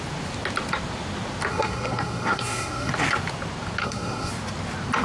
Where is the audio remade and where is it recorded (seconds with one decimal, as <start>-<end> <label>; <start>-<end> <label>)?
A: 0.0-1.5 recorded; 1.5-2.9 remade; 2.9-3.8 recorded; 3.8-4.3 remade; 4.3-5.0 recorded